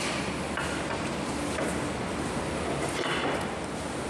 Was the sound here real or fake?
real